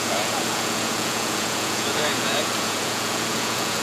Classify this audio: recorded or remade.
remade